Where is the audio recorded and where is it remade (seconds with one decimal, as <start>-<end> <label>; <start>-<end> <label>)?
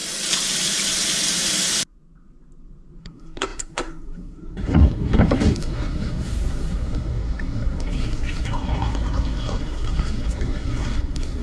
0.0-3.0 recorded; 3.0-11.4 remade